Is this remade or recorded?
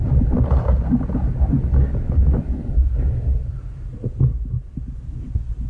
recorded